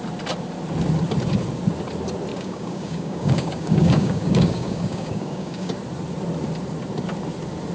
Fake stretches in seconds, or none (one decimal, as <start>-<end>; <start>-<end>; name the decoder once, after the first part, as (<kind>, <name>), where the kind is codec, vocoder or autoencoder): 2.3-5.7 (codec, DAC)